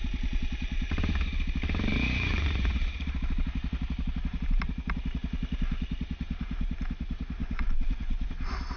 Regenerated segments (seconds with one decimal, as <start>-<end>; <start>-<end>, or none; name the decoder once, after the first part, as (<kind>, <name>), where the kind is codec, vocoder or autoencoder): 1.9-2.8 (vocoder, Vocos); 7.4-8.3